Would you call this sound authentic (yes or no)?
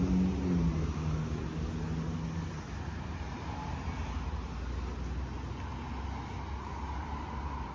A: yes